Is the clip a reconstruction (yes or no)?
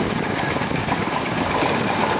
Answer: yes